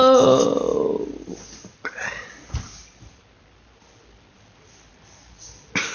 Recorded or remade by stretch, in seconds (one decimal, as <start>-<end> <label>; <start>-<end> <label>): 0.0-5.9 recorded